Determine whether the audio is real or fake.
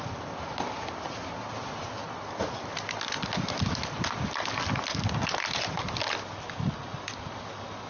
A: real